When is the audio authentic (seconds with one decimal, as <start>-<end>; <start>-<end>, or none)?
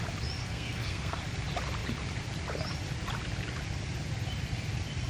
0.0-0.4; 1.2-5.1